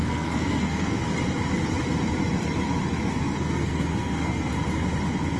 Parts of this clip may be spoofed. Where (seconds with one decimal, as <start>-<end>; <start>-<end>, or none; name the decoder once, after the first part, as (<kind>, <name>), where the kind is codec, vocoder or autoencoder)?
0.0-1.0 (codec, SNAC); 3.1-4.5